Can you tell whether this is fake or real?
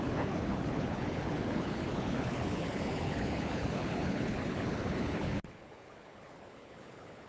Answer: fake